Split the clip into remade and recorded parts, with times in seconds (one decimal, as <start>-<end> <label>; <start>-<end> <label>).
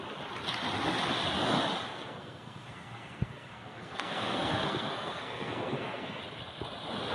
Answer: 0.0-1.9 recorded; 1.9-6.2 remade; 6.2-7.1 recorded